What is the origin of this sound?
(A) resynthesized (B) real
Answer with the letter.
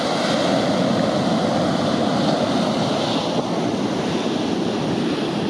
B